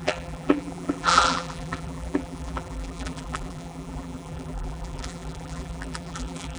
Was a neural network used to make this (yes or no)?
yes